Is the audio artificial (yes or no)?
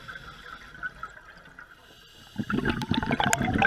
no